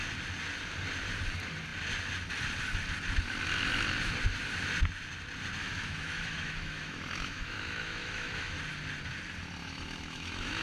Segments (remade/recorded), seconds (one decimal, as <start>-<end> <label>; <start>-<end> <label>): 0.0-5.6 recorded; 5.6-8.6 remade; 8.6-9.6 recorded; 9.6-10.6 remade